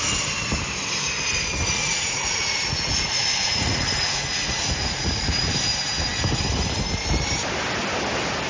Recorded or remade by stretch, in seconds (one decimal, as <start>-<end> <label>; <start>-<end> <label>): 0.0-1.8 recorded; 1.8-5.5 remade; 5.5-8.5 recorded